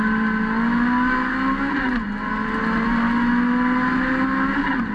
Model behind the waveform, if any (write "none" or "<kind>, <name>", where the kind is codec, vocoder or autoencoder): none